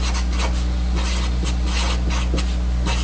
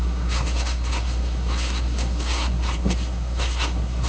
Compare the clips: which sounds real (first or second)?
first